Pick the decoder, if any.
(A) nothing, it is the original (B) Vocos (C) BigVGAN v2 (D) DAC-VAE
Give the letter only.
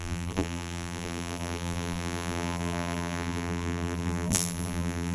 C